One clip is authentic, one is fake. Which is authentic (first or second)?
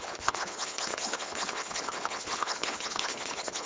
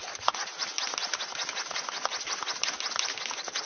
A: second